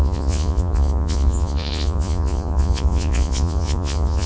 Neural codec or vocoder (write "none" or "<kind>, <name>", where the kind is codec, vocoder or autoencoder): vocoder, Vocos